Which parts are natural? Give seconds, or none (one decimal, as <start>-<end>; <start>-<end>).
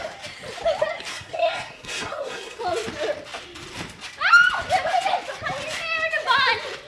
0.0-1.1; 2.6-6.9